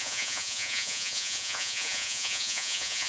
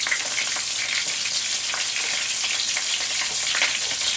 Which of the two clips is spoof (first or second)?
first